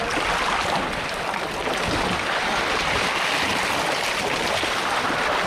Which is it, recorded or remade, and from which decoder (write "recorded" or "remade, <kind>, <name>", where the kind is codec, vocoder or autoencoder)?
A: recorded